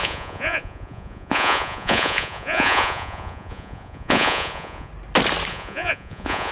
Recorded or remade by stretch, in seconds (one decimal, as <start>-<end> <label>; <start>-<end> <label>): 0.0-4.9 remade; 4.9-5.5 recorded; 5.5-6.5 remade